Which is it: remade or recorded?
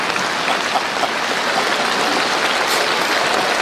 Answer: recorded